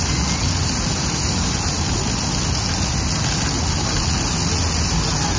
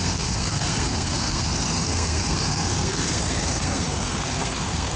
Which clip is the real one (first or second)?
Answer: first